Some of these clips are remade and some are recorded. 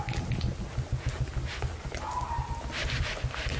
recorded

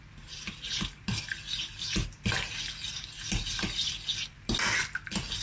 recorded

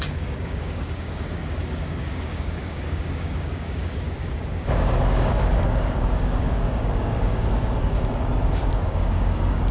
remade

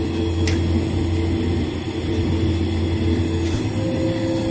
recorded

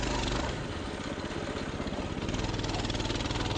recorded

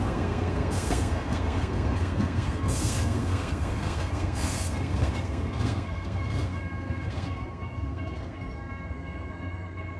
remade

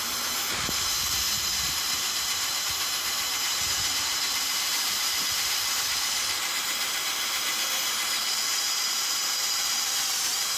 remade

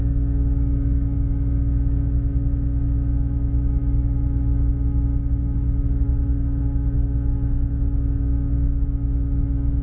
remade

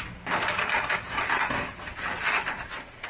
remade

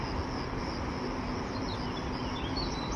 recorded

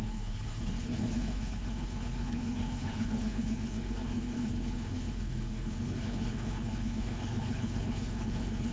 remade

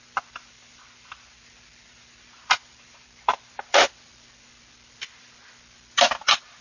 recorded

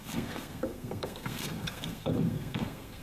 remade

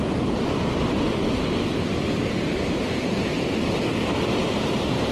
remade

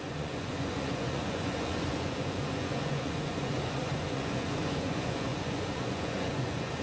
remade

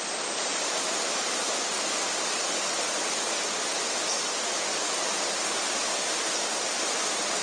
recorded